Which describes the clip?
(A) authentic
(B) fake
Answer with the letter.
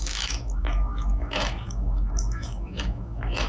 B